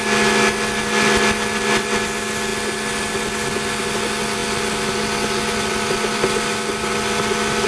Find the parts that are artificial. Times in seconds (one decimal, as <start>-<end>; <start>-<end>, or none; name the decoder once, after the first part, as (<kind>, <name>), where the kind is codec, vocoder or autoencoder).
none